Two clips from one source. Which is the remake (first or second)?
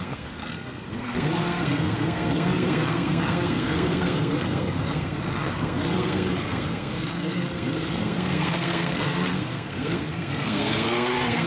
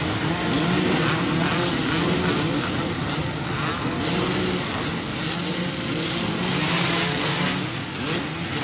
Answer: first